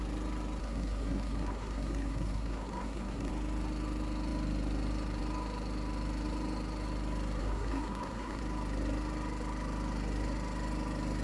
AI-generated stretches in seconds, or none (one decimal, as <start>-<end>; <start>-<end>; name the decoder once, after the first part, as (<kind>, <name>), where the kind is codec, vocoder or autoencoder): 0.6-3.3 (codec, SNAC); 7.4-8.4